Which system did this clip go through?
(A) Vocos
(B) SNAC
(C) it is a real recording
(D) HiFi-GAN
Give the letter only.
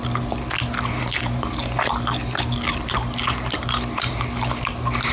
C